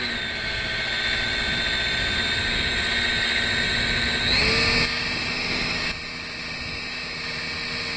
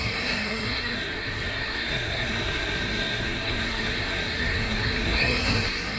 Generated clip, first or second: second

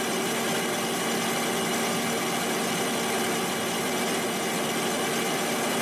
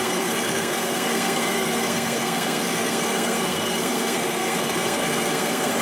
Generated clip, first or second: second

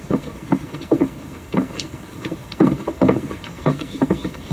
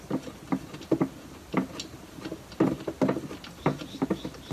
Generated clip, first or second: first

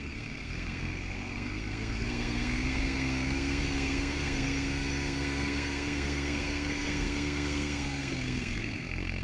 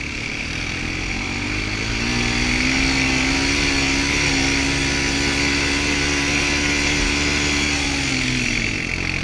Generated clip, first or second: first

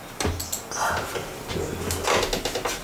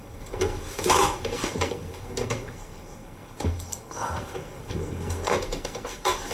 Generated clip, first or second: second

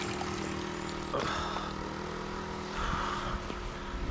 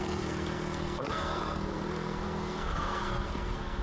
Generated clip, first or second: second